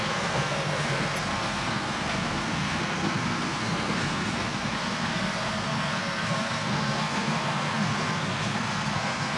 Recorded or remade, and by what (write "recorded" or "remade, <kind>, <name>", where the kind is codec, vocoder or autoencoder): remade, codec, SNAC